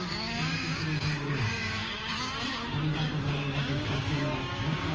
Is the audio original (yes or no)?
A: no